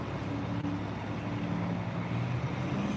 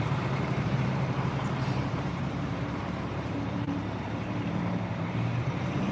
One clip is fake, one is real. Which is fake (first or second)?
second